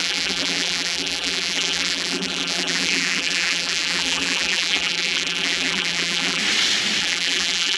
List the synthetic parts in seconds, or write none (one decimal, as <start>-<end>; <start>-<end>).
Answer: 0.0-6.4; 7.0-7.8